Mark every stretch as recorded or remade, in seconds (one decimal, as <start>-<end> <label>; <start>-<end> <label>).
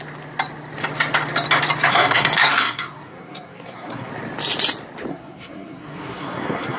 0.0-1.9 recorded; 1.9-4.1 remade; 4.1-5.1 recorded; 5.1-6.8 remade